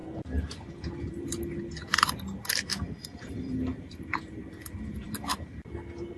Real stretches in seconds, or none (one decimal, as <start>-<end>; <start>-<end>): 0.0-2.7; 5.1-6.2